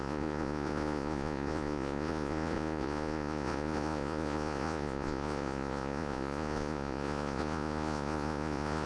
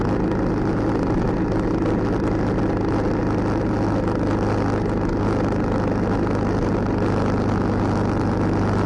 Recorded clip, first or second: second